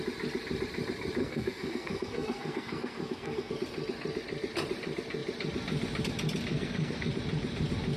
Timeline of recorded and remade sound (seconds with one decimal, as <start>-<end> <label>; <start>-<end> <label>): 0.0-1.2 recorded; 1.2-3.5 remade; 3.5-6.5 recorded; 6.5-7.1 remade; 7.1-8.0 recorded